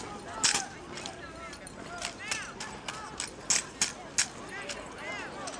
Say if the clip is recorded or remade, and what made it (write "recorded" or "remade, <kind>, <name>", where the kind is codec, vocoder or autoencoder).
recorded